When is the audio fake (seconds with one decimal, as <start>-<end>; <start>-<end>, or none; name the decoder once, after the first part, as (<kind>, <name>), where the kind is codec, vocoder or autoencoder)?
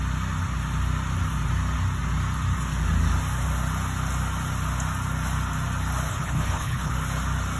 6.1-6.9 (codec, HILCodec)